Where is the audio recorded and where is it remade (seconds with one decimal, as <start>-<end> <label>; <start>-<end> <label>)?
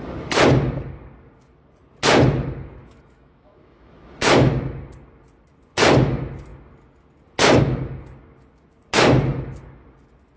0.0-2.8 recorded; 2.8-4.5 remade; 4.5-10.4 recorded